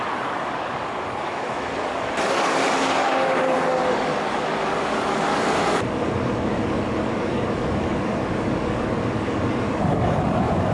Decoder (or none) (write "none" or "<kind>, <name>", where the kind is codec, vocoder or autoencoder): codec, DAC